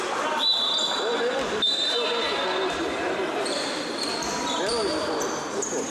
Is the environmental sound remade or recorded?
remade